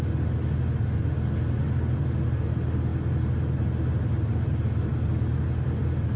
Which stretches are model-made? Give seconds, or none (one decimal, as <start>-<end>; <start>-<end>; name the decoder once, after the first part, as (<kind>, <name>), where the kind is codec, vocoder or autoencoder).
none